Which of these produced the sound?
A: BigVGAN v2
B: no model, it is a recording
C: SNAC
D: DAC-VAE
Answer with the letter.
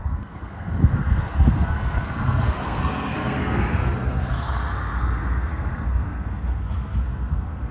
C